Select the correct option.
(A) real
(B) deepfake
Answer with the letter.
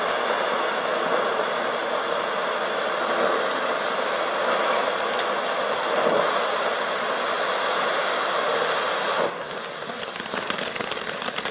A